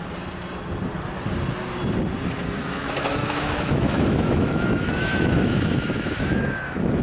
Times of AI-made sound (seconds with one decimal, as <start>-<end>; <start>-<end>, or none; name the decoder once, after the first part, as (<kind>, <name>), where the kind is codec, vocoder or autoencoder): 2.6-7.0 (autoencoder, DAC-VAE)